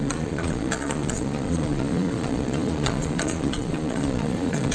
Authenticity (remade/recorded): remade